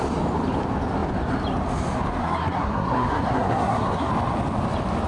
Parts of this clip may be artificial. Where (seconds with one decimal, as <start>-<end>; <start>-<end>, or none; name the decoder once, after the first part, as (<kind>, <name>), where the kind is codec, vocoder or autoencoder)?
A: 2.2-4.1 (codec, SNAC)